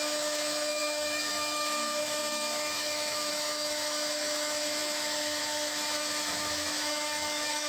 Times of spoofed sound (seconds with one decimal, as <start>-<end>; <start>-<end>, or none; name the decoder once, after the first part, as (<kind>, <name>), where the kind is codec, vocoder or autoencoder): 0.0-7.7 (autoencoder, DAC-VAE)